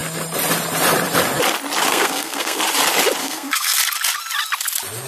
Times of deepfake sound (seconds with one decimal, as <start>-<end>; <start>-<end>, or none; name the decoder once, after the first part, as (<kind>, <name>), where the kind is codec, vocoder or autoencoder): 1.9-2.6 (codec, SNAC); 3.2-3.8